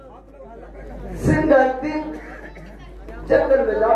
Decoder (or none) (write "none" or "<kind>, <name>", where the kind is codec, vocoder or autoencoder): none